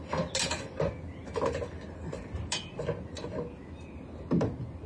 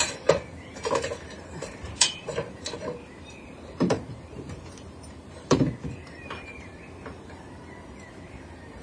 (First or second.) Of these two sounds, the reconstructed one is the second